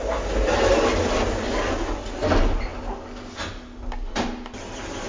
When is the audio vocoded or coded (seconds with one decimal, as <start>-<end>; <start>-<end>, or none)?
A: none